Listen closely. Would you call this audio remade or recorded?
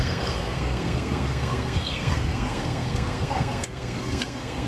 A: remade